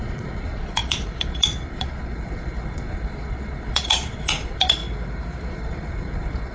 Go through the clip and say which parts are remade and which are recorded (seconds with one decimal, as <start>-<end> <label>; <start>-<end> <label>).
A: 0.0-4.8 remade; 4.8-5.5 recorded; 5.5-6.5 remade